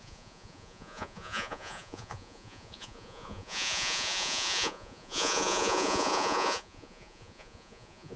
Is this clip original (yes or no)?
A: no